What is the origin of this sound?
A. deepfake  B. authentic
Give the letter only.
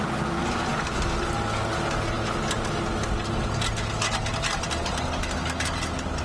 B